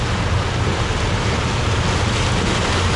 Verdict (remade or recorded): recorded